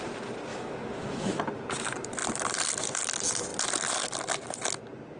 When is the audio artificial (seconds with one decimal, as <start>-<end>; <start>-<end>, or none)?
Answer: 0.5-1.4